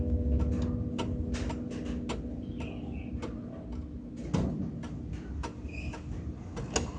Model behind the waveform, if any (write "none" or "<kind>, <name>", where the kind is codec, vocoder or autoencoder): none